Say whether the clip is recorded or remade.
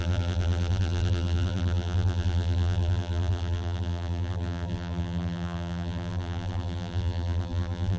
remade